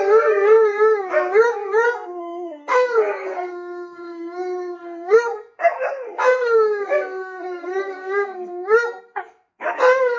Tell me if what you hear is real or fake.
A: fake